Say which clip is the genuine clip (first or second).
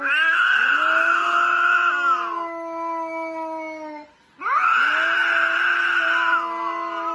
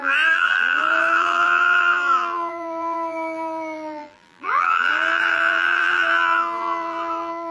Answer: first